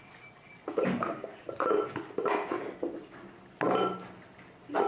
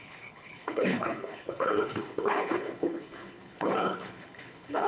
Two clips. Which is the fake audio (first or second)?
second